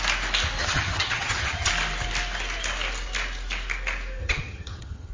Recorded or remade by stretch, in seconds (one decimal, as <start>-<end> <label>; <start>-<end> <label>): 0.0-0.6 recorded; 0.6-1.7 remade; 1.7-4.2 recorded; 4.2-5.1 remade